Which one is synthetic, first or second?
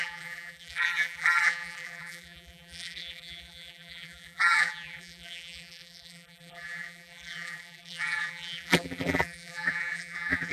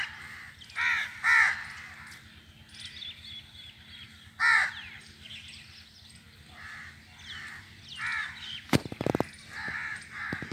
first